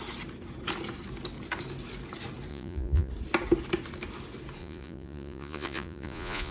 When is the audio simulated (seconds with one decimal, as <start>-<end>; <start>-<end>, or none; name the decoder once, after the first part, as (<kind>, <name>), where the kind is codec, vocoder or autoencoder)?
2.5-3.1 (vocoder, Vocos); 4.6-6.5